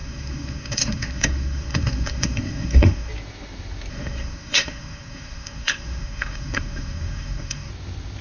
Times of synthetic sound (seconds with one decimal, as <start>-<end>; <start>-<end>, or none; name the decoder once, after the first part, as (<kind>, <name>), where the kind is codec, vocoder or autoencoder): 0.0-3.1 (codec, SNAC); 3.9-7.7